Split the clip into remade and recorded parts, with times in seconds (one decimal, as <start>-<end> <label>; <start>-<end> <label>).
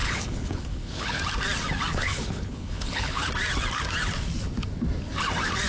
0.0-1.2 remade; 1.2-1.9 recorded; 1.9-3.3 remade; 3.3-5.7 recorded